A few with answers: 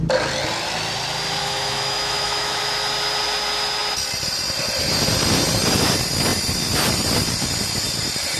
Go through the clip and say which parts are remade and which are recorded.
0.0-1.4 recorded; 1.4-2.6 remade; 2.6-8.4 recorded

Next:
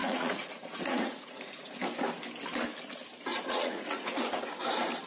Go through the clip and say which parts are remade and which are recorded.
0.0-1.8 remade; 1.8-3.3 recorded; 3.3-4.2 remade; 4.2-5.1 recorded

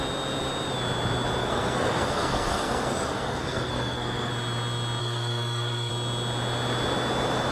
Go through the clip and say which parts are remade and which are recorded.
0.0-1.4 recorded; 1.4-4.3 remade; 4.3-5.0 recorded; 5.0-5.9 remade; 5.9-7.5 recorded

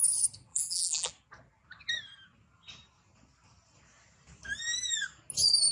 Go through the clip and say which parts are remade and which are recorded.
0.0-0.5 recorded; 0.5-1.1 remade; 1.1-5.7 recorded

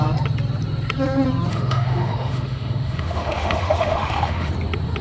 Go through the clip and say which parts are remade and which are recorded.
0.0-1.5 recorded; 1.5-4.5 remade; 4.5-5.0 recorded

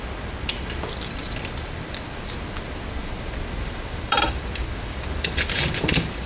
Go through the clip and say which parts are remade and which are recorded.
0.0-3.0 recorded; 3.0-6.3 remade